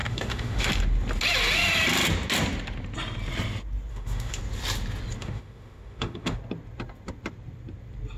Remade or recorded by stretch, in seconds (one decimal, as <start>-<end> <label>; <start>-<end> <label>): 0.0-0.7 remade; 0.7-3.9 recorded; 3.9-4.4 remade; 4.4-5.2 recorded; 5.2-6.4 remade; 6.4-8.2 recorded